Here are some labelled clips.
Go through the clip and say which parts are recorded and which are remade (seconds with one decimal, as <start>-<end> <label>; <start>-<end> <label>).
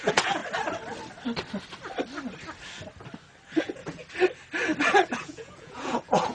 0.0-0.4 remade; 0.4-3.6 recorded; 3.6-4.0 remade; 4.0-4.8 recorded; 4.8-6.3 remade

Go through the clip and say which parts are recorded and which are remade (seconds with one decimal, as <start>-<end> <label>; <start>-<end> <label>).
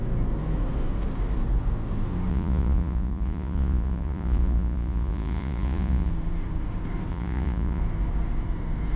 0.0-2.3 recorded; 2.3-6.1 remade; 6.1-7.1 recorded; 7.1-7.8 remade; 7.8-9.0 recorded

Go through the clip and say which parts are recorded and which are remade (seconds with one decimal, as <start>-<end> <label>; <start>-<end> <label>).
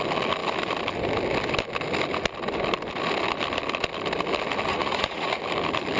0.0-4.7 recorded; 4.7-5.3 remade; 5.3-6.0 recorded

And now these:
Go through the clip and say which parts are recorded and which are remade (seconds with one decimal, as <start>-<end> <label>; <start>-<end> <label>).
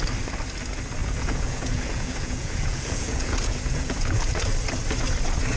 0.0-1.0 recorded; 1.0-4.4 remade; 4.4-5.6 recorded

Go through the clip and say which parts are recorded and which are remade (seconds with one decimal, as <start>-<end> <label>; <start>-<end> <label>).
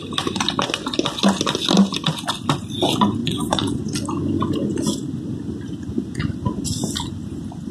0.0-3.2 recorded; 3.2-3.8 remade; 3.8-7.7 recorded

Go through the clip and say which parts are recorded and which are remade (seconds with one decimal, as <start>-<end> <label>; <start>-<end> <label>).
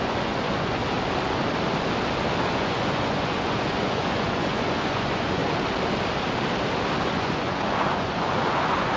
0.0-0.8 remade; 0.8-2.4 recorded; 2.4-5.4 remade; 5.4-7.0 recorded; 7.0-9.0 remade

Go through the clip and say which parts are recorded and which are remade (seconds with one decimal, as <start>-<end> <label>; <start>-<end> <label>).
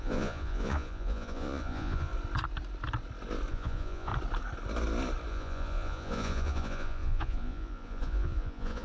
0.0-2.1 remade; 2.1-3.5 recorded; 3.5-4.1 remade; 4.1-5.3 recorded; 5.3-8.8 remade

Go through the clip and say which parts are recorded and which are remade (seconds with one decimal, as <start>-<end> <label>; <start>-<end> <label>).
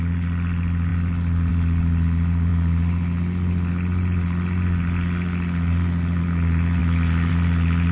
0.0-7.9 recorded